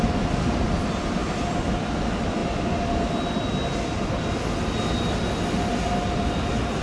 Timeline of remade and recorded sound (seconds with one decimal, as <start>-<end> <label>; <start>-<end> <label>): 0.0-6.8 recorded

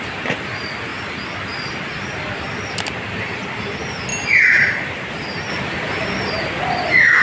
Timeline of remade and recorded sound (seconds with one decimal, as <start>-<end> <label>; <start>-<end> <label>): 0.0-7.2 recorded